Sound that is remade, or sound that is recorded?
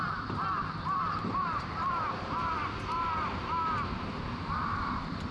remade